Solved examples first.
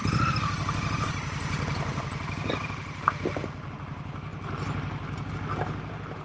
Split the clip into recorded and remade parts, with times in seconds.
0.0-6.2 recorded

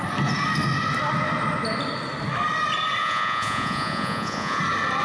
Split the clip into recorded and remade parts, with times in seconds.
0.0-3.0 recorded; 3.0-4.6 remade; 4.6-5.0 recorded

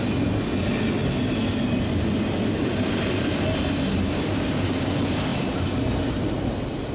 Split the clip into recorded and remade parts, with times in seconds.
0.0-6.9 recorded

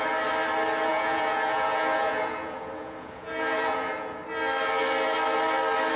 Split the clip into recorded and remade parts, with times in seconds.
0.0-0.9 recorded; 0.9-4.2 remade; 4.2-6.0 recorded

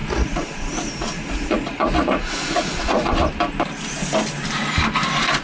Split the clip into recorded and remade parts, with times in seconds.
0.0-3.1 remade; 3.1-5.4 recorded

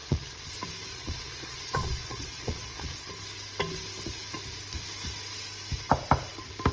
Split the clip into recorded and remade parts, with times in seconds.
0.0-0.5 remade; 0.5-0.9 recorded; 0.9-3.1 remade; 3.1-6.7 recorded